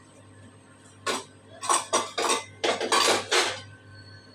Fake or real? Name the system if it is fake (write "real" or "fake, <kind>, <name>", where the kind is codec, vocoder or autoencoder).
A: real